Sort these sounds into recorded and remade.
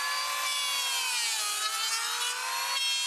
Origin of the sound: recorded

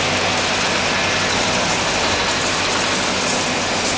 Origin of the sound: recorded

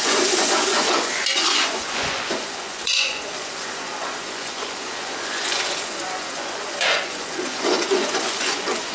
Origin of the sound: remade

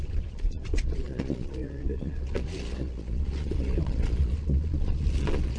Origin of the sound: remade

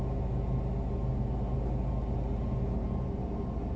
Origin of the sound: recorded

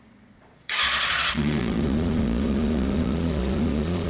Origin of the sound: remade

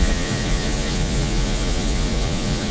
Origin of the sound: remade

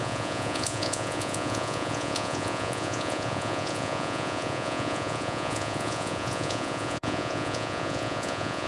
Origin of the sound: remade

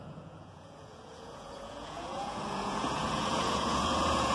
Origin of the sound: remade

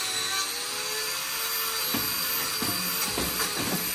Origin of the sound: recorded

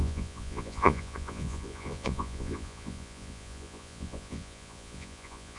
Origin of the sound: remade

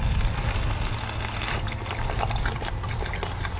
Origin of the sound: recorded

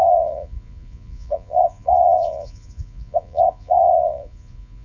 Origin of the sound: remade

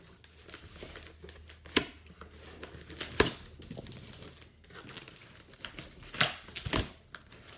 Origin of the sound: recorded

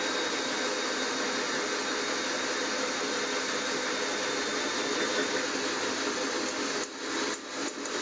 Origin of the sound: recorded